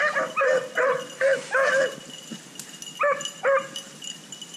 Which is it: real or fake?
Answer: real